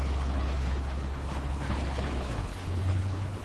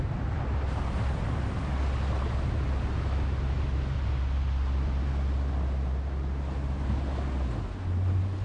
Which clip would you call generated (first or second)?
first